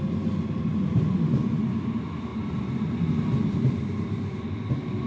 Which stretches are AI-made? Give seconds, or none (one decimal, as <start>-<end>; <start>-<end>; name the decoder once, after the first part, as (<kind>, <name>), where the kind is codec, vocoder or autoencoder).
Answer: none